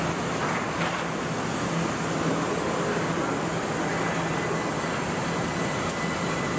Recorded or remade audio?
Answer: recorded